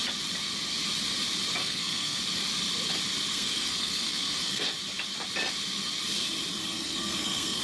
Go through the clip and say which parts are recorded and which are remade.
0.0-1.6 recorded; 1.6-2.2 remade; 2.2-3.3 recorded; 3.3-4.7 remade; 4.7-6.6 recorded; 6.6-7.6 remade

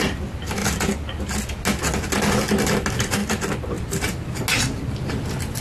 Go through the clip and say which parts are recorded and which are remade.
0.0-5.6 recorded

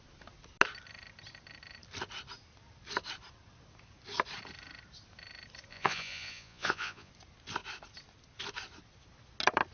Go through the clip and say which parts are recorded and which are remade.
0.0-5.7 recorded; 5.7-7.1 remade; 7.1-9.7 recorded

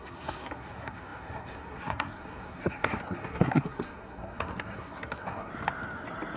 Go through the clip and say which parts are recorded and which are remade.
0.0-5.5 remade; 5.5-6.4 recorded

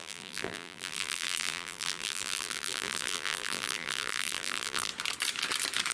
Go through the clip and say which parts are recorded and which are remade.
0.0-4.9 remade; 4.9-5.9 recorded

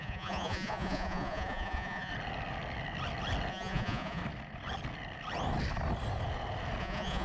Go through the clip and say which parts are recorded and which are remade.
0.0-2.1 remade; 2.1-3.5 recorded; 3.5-4.2 remade; 4.2-6.8 recorded; 6.8-7.2 remade

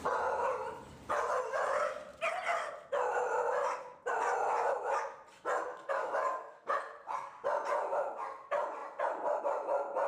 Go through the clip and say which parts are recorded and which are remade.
0.0-5.7 recorded; 5.7-6.7 remade; 6.7-10.1 recorded

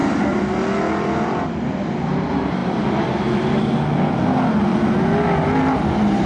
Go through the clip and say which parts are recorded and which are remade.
0.0-6.3 recorded